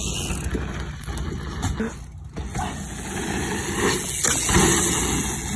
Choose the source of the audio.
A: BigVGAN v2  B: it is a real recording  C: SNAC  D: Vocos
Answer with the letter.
B